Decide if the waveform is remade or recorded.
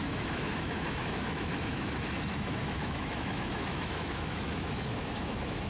remade